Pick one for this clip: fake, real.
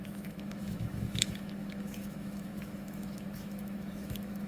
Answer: fake